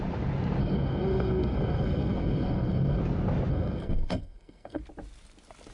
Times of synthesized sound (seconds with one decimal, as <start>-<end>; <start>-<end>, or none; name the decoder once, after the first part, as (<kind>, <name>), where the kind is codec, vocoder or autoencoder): 0.6-3.0 (codec, SNAC); 3.5-4.8